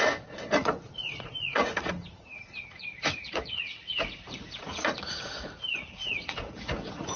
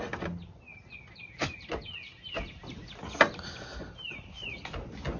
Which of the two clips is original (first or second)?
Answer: second